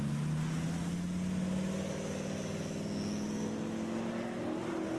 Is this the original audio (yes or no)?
yes